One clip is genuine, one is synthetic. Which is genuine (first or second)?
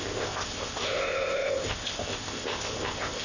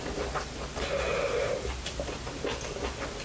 second